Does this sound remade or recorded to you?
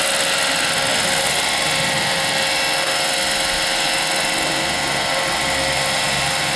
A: recorded